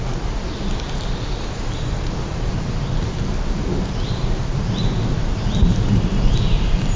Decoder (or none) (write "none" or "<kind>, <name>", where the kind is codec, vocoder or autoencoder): none